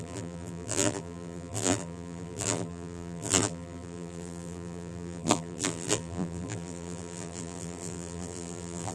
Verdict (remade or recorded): remade